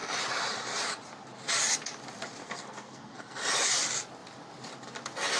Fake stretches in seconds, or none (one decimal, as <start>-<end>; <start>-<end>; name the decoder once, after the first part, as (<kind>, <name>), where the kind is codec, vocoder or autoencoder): 2.4-3.4 (codec, SNAC)